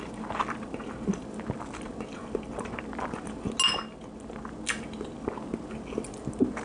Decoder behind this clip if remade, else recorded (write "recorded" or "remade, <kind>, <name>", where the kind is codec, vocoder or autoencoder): recorded